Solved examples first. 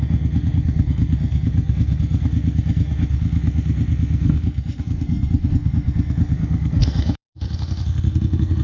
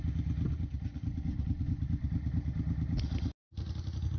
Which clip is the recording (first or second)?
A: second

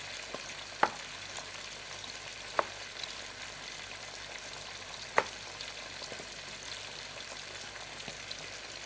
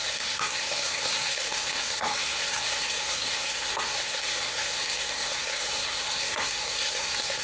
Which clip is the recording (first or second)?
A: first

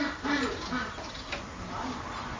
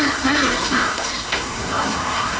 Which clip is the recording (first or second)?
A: first